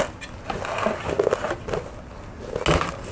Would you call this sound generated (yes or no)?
no